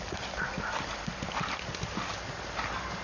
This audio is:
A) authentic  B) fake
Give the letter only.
A